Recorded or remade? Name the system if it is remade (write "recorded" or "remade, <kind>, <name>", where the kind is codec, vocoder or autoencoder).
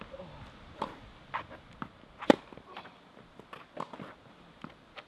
recorded